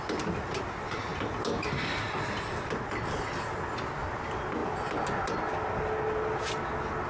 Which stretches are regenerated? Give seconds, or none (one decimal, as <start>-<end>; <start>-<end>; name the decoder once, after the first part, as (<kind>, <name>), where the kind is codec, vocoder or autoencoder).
none